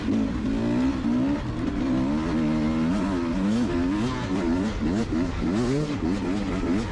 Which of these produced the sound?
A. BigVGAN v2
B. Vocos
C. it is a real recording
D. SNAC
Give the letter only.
C